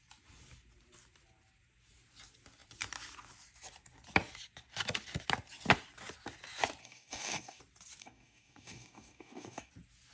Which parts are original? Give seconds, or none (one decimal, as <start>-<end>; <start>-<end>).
0.0-6.8; 7.6-8.0; 9.7-10.1